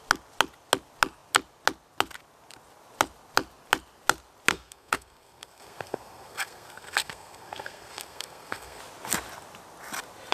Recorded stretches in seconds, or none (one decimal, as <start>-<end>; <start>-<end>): 0.0-4.5; 8.8-10.3